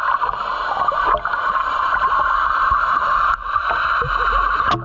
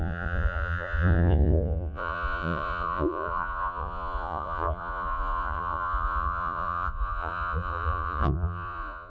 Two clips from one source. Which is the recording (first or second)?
first